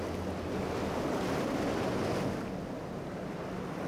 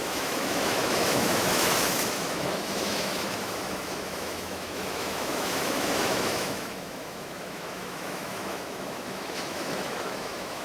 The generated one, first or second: second